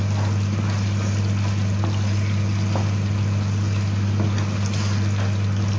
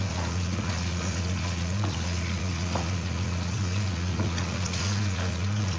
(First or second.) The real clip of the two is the first